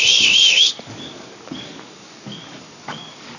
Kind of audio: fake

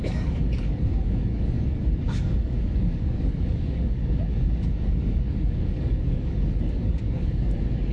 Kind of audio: fake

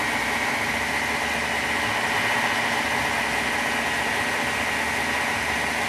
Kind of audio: real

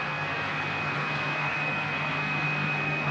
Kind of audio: fake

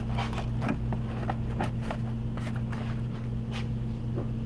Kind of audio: real